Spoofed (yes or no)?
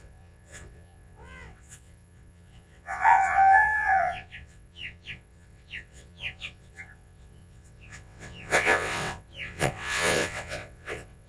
yes